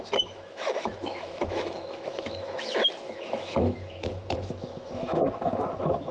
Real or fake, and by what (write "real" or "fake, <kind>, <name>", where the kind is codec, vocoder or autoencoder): fake, autoencoder, DAC-VAE